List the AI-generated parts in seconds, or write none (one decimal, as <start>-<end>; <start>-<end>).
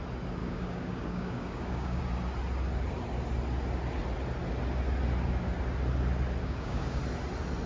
0.4-2.0; 6.4-7.0